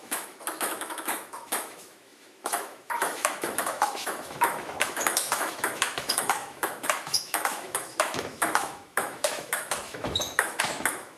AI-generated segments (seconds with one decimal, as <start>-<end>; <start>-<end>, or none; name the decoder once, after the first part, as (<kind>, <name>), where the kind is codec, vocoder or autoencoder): 0.0-11.2 (autoencoder, DAC-VAE)

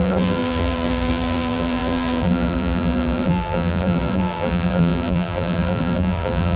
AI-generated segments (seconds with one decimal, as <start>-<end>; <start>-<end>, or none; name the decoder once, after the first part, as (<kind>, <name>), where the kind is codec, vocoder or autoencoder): 0.0-6.6 (vocoder, BigVGAN v2)

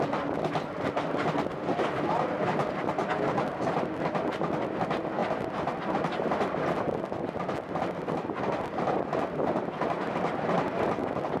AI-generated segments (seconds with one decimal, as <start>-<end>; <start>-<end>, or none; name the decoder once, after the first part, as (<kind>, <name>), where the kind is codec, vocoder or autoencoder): none

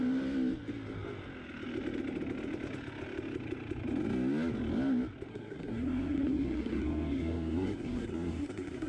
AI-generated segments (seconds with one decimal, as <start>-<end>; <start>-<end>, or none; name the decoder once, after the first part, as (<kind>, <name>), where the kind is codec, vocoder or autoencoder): 5.3-8.9 (codec, SNAC)